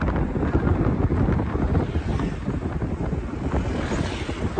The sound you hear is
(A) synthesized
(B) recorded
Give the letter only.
B